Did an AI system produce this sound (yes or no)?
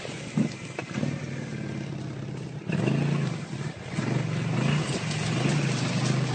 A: no